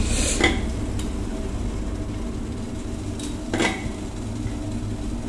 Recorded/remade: recorded